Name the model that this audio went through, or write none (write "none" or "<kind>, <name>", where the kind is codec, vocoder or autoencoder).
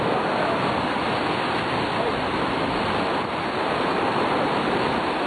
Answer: none